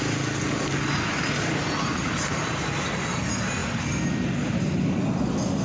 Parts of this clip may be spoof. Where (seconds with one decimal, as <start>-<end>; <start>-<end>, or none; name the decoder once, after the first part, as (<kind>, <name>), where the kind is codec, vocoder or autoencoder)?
none

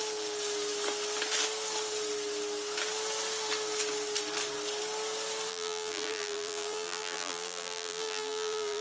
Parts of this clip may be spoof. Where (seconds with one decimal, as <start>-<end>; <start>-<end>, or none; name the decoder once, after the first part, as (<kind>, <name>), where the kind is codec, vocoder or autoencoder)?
5.5-8.8 (vocoder, BigVGAN v2)